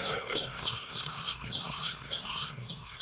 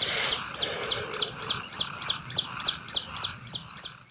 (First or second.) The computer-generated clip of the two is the first